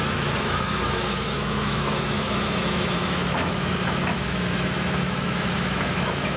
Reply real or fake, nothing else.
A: fake